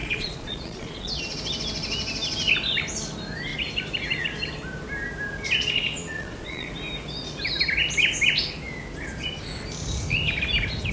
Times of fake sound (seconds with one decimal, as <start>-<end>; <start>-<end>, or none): 0.0-1.2; 6.0-6.7